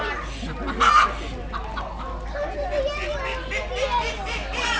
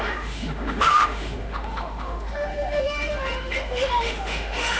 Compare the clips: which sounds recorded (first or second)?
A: first